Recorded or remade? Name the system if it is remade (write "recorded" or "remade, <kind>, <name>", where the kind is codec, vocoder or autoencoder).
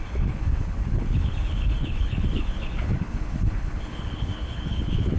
remade, codec, HILCodec